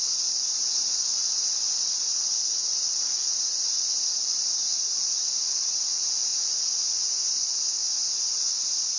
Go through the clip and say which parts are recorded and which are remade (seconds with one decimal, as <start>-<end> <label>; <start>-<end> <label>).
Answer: 0.0-3.2 remade; 3.2-4.1 recorded; 4.1-6.3 remade; 6.3-7.3 recorded; 7.3-7.8 remade; 7.8-9.0 recorded